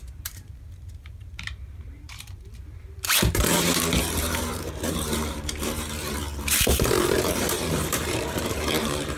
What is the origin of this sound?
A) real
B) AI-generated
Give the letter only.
B